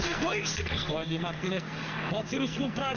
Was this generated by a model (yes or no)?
yes